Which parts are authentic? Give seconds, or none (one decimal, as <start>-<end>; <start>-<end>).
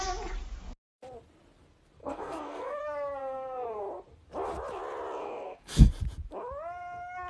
0.0-2.0; 2.8-3.2; 3.8-5.2; 5.9-7.3